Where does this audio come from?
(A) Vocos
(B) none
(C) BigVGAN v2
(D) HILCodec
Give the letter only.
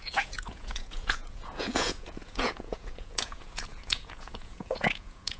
A